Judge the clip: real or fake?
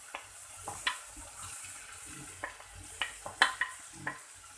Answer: real